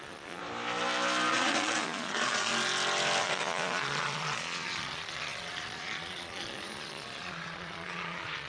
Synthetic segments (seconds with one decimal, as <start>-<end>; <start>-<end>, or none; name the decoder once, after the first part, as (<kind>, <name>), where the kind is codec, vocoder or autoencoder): 0.0-0.4 (vocoder, Vocos); 1.3-2.5; 3.2-8.5